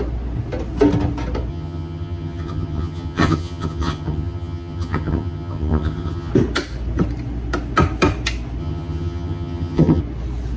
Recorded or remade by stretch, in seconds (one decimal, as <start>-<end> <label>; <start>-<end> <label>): 0.0-1.5 recorded; 1.5-6.3 remade; 6.3-8.6 recorded; 8.6-10.0 remade; 10.0-10.6 recorded